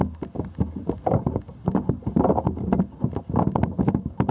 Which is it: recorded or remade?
recorded